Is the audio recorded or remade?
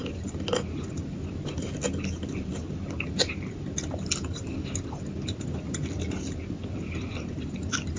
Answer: recorded